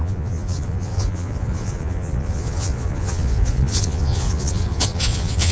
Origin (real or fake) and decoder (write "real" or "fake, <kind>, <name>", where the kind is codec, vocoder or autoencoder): fake, vocoder, Vocos